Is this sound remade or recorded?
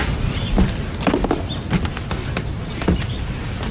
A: recorded